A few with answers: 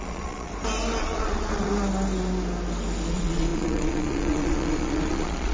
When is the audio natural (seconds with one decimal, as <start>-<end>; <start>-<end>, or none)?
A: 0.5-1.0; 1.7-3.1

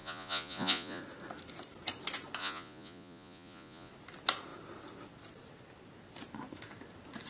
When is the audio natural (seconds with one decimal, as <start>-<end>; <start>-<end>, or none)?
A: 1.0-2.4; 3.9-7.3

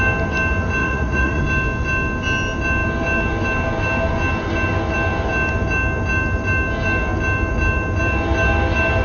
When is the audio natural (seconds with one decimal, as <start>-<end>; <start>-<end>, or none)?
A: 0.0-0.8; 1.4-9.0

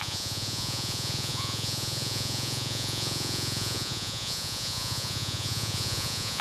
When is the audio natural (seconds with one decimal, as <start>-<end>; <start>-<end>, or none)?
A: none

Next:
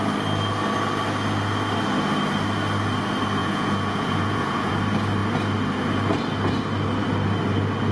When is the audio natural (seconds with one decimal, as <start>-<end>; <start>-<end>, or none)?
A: 0.0-3.4; 4.7-7.9